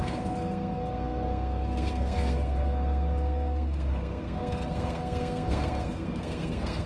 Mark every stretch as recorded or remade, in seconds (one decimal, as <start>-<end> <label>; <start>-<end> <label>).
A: 0.0-6.9 remade